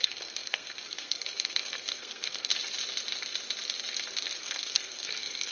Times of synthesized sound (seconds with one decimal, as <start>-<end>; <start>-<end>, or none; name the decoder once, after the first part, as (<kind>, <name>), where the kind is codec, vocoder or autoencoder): 0.0-2.5 (codec, SNAC); 4.4-5.5